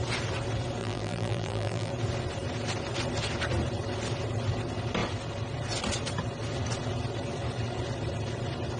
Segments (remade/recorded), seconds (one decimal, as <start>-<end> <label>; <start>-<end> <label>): 0.0-0.8 recorded; 0.8-1.9 remade; 1.9-8.8 recorded